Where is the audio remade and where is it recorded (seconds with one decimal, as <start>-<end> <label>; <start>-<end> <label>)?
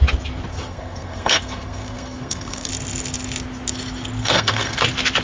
0.0-0.5 recorded; 0.5-2.7 remade; 2.7-4.2 recorded; 4.2-4.8 remade; 4.8-5.2 recorded